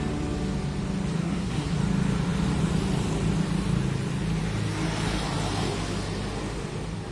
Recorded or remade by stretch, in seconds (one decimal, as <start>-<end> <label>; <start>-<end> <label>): 0.0-1.2 recorded; 1.2-1.8 remade; 1.8-7.1 recorded